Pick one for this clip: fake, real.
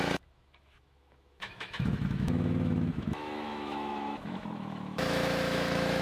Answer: fake